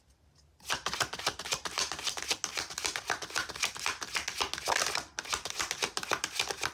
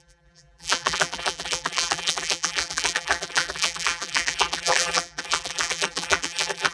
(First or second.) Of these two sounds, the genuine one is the first